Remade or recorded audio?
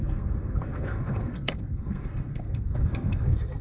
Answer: remade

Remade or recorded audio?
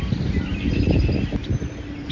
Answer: recorded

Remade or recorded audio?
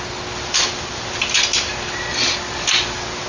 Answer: recorded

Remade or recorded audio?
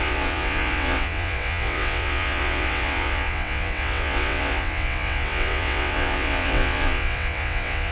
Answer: remade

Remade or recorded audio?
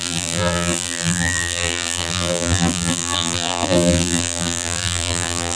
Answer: remade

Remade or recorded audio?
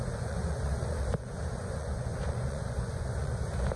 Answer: remade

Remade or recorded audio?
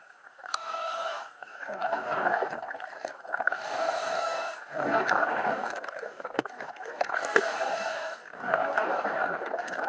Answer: remade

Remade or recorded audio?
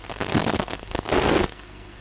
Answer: remade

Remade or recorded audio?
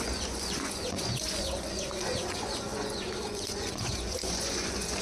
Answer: remade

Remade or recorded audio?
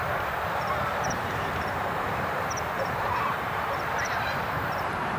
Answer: remade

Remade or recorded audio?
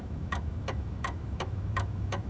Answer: remade